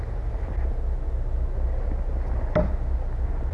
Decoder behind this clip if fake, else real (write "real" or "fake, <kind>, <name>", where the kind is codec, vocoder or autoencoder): real